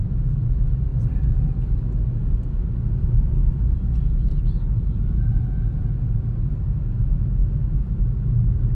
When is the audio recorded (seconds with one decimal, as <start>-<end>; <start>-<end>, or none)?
0.0-8.7